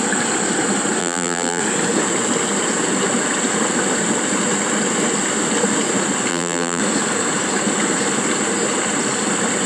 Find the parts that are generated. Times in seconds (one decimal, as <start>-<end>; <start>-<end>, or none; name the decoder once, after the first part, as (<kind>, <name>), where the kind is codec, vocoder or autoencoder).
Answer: 1.0-1.6 (vocoder, BigVGAN v2); 6.3-6.8